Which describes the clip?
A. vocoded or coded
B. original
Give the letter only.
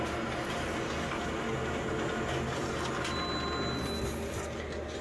B